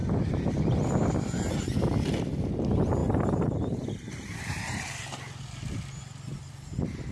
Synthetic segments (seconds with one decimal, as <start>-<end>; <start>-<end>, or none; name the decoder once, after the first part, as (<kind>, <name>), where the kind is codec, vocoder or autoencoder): 3.0-4.8 (vocoder, BigVGAN v2)